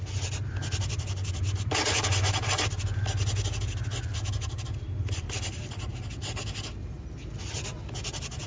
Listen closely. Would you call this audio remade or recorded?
recorded